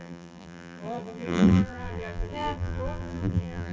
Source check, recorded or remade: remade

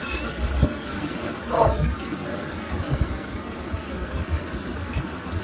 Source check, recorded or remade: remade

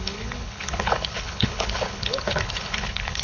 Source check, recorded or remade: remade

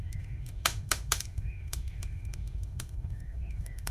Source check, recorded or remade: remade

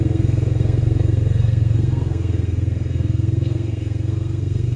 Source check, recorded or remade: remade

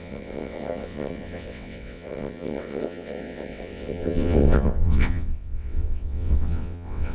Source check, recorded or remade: remade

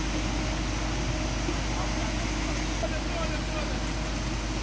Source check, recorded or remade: recorded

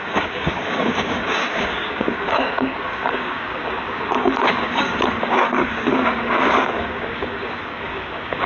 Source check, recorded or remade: remade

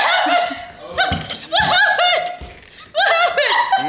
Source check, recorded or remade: recorded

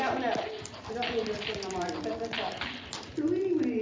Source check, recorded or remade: recorded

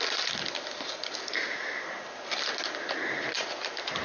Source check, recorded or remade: recorded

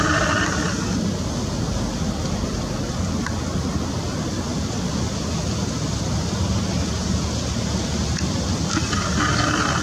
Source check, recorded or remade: recorded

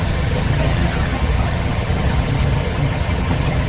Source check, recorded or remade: remade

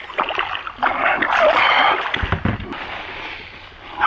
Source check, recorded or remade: recorded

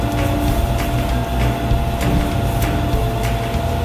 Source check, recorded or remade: recorded